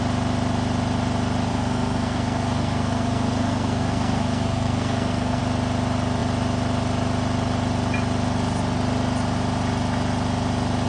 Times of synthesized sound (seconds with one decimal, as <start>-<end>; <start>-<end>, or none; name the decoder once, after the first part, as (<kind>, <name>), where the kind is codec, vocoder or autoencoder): 1.5-5.4 (codec, SNAC)